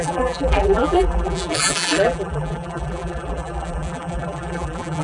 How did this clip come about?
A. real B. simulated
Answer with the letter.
B